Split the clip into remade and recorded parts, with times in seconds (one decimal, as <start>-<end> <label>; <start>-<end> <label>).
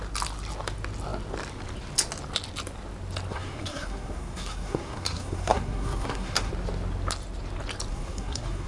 0.0-3.3 recorded; 3.3-6.5 remade; 6.5-7.9 recorded; 7.9-8.7 remade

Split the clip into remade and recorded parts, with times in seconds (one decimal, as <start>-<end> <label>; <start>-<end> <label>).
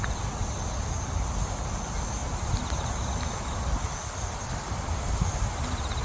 0.0-6.0 recorded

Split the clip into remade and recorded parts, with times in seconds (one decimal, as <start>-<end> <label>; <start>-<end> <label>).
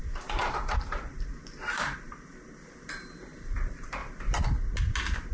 0.0-4.0 remade; 4.0-5.3 recorded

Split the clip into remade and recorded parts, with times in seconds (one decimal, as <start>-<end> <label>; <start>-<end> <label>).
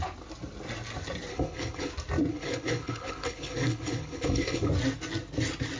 0.0-1.3 recorded; 1.3-1.9 remade; 1.9-2.3 recorded; 2.3-4.7 remade; 4.7-5.8 recorded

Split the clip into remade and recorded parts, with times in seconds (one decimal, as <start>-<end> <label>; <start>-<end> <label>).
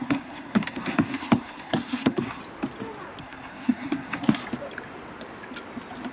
0.0-2.4 remade; 2.4-3.2 recorded; 3.2-4.4 remade; 4.4-6.1 recorded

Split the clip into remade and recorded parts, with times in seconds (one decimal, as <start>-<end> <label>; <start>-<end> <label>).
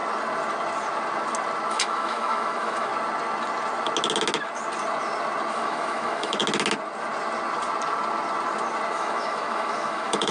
0.0-1.7 recorded; 1.7-2.9 remade; 2.9-5.5 recorded; 5.5-6.4 remade; 6.4-8.9 recorded; 8.9-10.3 remade